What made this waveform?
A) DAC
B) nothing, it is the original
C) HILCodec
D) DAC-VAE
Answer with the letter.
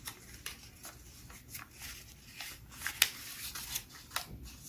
B